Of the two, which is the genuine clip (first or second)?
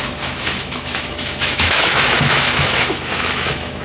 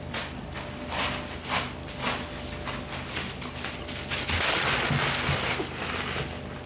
second